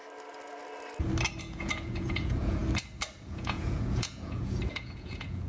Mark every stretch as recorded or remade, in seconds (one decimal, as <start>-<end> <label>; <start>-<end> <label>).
0.0-1.4 recorded; 1.4-2.6 remade; 2.6-3.2 recorded; 3.2-5.5 remade